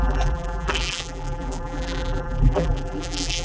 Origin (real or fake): fake